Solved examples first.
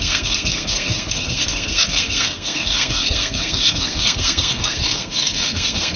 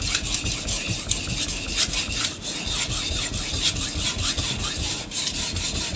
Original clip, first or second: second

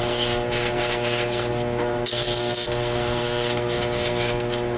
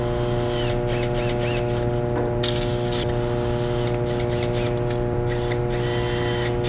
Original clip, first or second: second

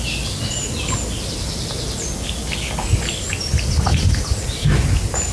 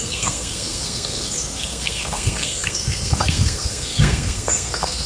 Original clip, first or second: first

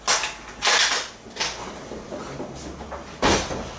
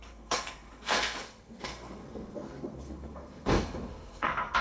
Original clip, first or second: first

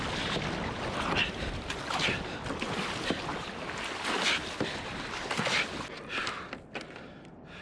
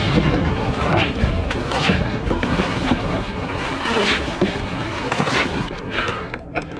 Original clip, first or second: first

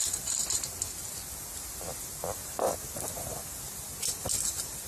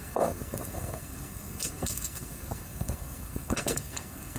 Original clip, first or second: first